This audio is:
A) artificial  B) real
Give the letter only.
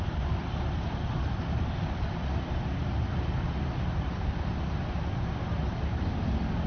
A